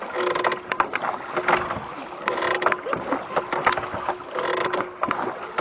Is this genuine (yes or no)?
yes